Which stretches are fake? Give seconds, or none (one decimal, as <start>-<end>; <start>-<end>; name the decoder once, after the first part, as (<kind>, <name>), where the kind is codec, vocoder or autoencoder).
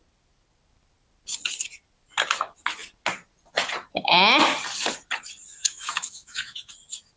5.6-6.7 (autoencoder, DAC-VAE)